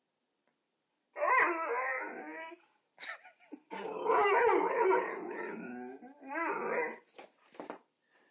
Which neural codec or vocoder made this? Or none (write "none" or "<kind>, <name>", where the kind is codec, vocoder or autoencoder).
none